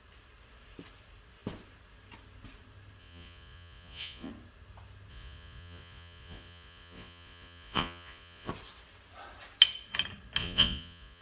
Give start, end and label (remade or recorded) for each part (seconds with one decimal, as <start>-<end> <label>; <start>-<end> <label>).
0.0-3.0 recorded; 3.0-4.3 remade; 4.3-5.1 recorded; 5.1-8.5 remade; 8.5-10.4 recorded; 10.4-11.2 remade